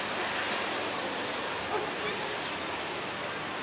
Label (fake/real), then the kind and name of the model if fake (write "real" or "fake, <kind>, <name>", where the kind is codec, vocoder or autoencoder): real